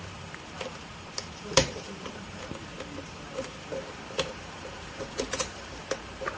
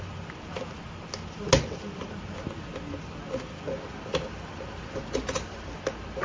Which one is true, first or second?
second